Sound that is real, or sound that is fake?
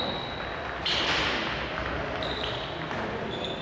real